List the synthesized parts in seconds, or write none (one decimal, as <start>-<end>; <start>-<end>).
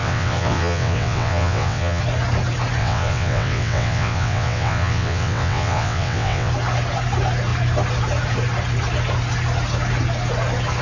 0.0-2.0; 2.8-6.5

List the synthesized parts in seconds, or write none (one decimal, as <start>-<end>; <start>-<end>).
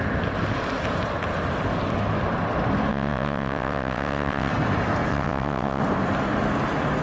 2.9-4.5; 5.1-5.8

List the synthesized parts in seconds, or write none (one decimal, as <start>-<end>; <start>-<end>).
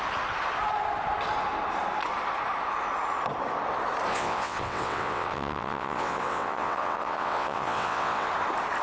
4.1-8.3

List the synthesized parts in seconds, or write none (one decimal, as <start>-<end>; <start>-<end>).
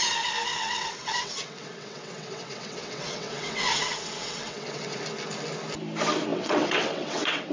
0.5-5.0; 6.3-7.5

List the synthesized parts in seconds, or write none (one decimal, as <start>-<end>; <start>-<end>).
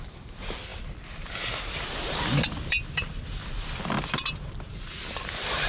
none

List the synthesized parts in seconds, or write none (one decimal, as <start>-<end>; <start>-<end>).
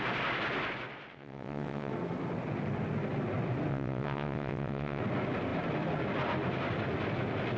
1.1-1.9; 3.7-5.0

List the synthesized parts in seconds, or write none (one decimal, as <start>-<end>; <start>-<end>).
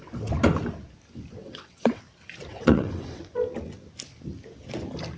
1.4-2.0; 2.5-3.2